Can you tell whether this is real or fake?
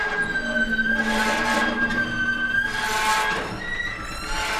real